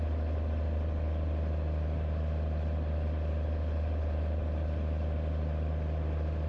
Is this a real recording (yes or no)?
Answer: yes